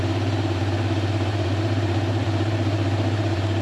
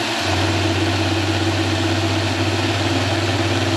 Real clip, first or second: second